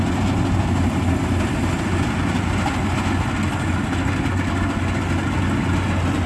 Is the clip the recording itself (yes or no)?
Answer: yes